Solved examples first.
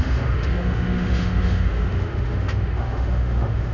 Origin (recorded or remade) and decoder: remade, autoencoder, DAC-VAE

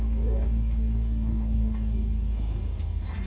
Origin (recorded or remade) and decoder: remade, codec, DAC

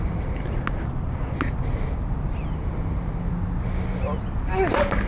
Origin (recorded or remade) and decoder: recorded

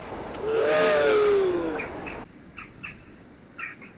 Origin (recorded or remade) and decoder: remade, codec, DAC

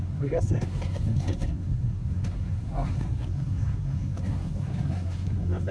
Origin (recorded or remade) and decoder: remade, codec, SNAC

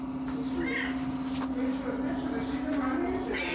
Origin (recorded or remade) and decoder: recorded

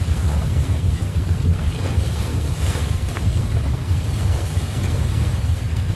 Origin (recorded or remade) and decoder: remade, codec, SNAC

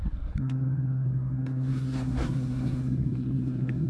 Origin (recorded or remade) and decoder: remade, codec, SNAC